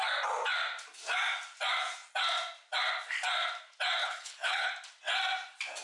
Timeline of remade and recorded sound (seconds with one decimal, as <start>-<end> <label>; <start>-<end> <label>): 0.0-4.0 recorded; 4.0-4.7 remade; 4.7-5.8 recorded